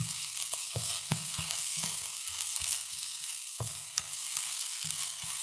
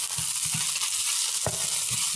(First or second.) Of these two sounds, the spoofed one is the first